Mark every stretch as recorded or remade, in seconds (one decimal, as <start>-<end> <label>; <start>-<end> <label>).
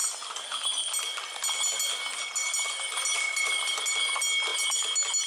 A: 0.0-5.3 recorded